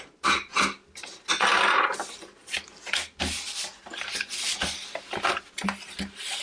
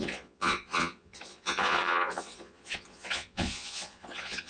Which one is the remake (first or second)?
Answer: second